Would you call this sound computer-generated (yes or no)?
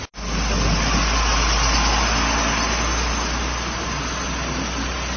no